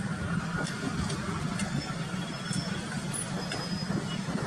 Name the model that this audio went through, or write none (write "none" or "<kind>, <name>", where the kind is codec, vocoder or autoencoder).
none